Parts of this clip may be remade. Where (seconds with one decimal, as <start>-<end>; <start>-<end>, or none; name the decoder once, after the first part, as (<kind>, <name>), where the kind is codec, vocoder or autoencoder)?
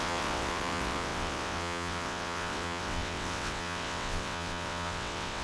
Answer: 0.0-5.4 (vocoder, WaveNeXt)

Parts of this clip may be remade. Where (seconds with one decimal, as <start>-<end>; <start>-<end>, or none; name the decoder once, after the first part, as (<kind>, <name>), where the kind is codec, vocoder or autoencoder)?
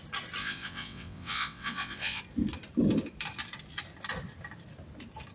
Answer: 0.4-2.2 (vocoder, WaveNeXt)